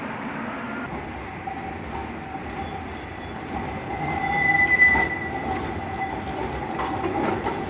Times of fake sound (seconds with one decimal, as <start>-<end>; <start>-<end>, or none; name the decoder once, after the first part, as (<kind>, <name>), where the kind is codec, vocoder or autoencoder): none